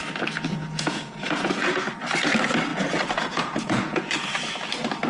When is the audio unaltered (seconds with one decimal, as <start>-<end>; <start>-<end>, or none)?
0.0-0.6; 1.9-2.7; 4.1-5.1